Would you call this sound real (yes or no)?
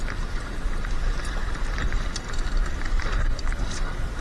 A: yes